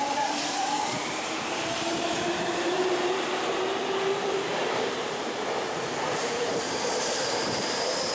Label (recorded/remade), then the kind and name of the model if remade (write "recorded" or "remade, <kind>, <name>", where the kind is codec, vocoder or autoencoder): remade, vocoder, BigVGAN v2